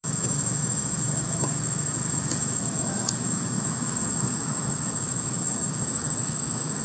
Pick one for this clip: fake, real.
fake